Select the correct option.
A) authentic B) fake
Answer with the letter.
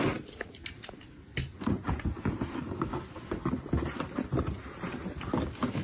A